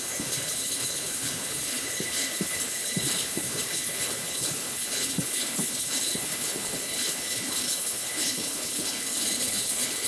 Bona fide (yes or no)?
no